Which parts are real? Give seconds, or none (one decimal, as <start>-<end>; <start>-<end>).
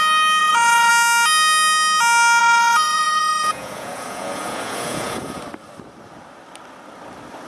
0.0-0.4; 0.9-2.4; 5.4-7.5